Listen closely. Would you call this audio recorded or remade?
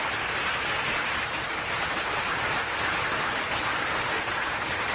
recorded